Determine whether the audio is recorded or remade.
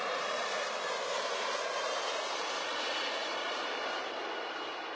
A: remade